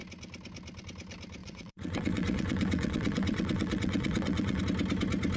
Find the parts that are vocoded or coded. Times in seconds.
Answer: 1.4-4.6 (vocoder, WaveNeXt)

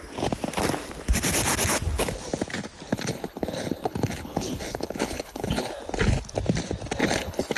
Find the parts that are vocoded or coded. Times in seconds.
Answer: 2.9-5.7 (codec, HILCodec); 7.0-7.6

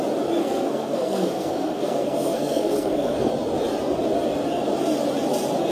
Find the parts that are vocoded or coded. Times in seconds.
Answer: 0.4-3.3 (codec, SNAC)